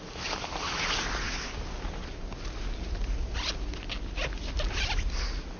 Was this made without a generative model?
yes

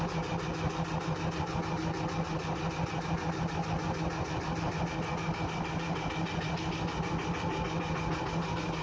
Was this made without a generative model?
yes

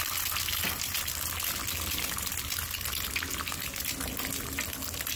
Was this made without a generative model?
yes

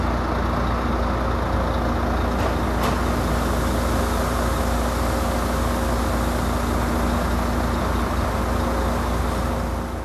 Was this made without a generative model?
yes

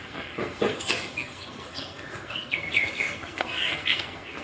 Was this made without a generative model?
no